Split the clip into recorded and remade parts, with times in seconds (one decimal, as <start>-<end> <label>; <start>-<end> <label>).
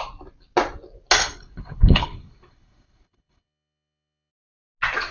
0.0-1.2 recorded; 1.2-4.3 remade; 4.3-5.1 recorded